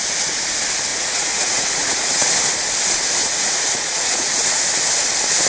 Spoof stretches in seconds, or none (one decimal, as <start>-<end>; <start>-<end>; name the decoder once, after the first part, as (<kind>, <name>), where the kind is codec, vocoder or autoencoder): 0.9-2.3 (vocoder, Vocos); 3.2-4.6